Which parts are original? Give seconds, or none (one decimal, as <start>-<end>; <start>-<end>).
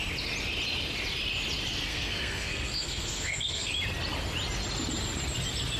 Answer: 0.0-1.9; 3.7-5.8